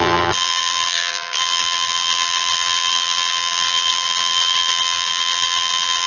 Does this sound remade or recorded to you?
remade